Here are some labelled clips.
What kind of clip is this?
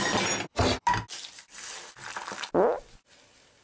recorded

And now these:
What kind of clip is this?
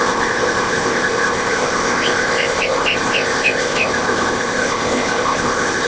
remade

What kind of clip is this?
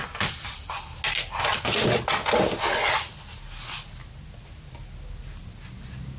recorded